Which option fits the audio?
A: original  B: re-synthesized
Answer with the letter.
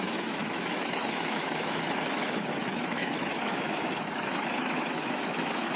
B